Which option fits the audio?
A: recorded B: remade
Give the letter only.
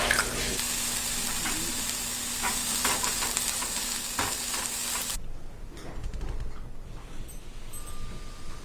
A